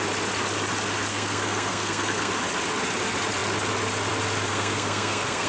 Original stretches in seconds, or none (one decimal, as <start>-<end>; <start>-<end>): 0.0-1.1; 2.3-4.5